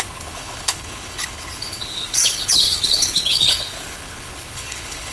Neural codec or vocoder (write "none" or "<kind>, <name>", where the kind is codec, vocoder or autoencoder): codec, HILCodec